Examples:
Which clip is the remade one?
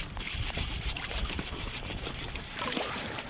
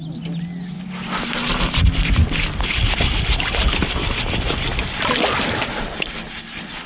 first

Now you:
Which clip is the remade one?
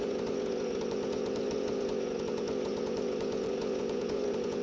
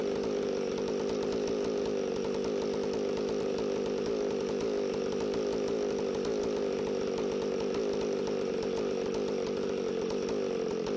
first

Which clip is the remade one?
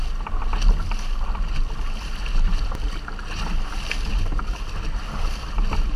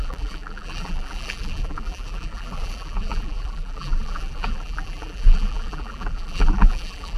second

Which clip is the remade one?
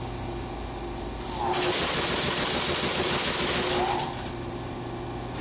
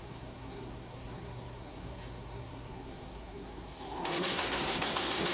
second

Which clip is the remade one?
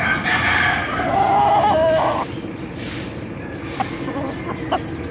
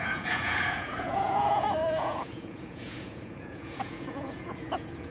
second